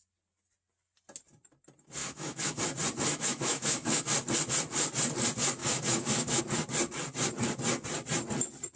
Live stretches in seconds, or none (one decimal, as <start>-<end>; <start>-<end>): 0.0-2.0; 2.6-3.1; 4.0-5.6; 6.4-8.8